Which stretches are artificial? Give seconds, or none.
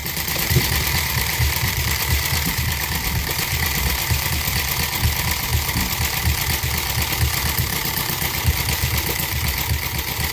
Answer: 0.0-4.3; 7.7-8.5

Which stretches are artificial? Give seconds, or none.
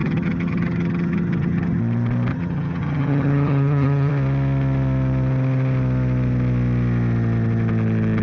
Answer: 0.0-1.8; 2.3-4.1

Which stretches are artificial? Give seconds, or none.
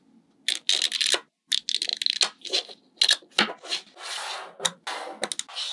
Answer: none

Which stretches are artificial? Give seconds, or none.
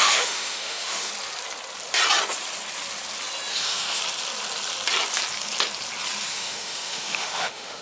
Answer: 0.0-1.1; 3.5-4.0; 6.3-7.8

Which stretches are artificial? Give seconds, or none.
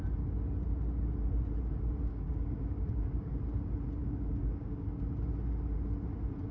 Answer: 2.1-3.3; 4.0-5.0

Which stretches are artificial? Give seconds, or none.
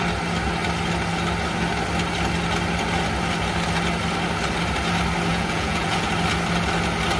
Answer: 5.3-6.1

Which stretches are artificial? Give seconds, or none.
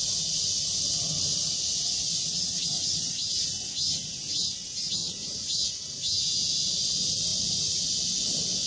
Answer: 1.3-3.1; 5.0-5.8; 7.3-7.9